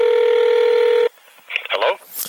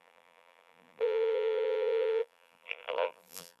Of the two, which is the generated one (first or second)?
second